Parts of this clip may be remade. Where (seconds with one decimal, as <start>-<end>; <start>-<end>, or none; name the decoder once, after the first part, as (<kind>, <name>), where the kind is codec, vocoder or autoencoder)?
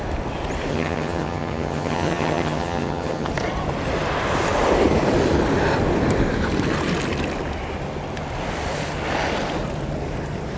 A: 0.7-3.3 (vocoder, HiFi-GAN)